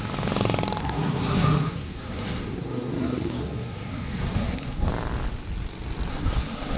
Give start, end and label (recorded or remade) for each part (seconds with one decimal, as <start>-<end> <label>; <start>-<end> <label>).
0.0-0.8 recorded; 0.8-4.9 remade; 4.9-6.1 recorded; 6.1-6.8 remade